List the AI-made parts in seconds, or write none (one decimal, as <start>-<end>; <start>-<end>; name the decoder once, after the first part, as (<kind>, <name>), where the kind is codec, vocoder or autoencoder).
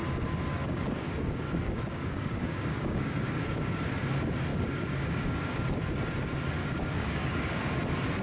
0.5-3.9 (codec, DAC); 4.5-5.6; 6.6-7.6